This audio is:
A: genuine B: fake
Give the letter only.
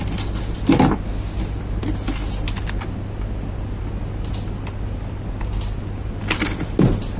A